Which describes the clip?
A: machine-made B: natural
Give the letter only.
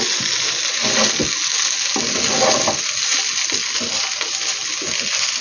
B